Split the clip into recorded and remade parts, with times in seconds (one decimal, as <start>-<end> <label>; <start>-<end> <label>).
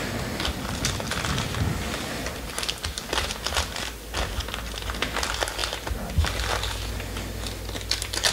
0.0-5.6 recorded; 5.6-6.2 remade; 6.2-8.3 recorded